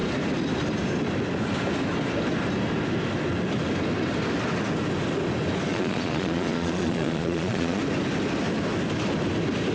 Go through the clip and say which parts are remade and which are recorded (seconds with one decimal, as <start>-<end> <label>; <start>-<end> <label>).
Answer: 0.0-5.7 recorded; 5.7-7.8 remade; 7.8-9.7 recorded